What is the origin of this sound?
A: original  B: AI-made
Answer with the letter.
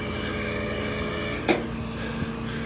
A